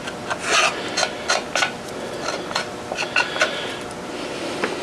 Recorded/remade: recorded